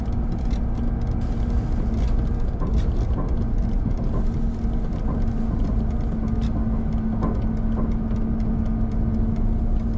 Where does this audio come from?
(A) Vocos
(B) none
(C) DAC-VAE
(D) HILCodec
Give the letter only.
B